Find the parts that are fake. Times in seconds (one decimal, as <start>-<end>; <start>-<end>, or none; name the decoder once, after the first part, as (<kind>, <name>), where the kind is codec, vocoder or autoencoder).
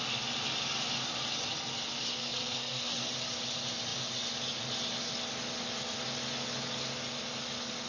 2.2-3.1 (codec, SNAC)